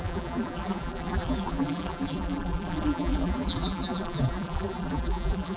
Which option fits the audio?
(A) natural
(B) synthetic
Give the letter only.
B